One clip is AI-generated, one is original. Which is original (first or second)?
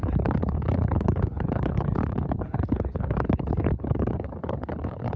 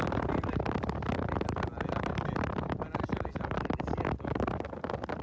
second